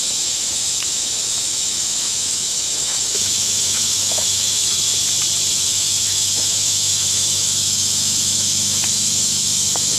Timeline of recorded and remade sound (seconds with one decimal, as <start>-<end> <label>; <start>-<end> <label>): 0.0-4.9 remade; 4.9-5.5 recorded; 5.5-10.0 remade